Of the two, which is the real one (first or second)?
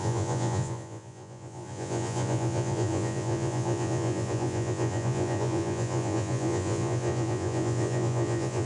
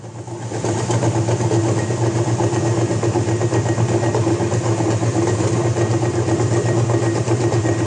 second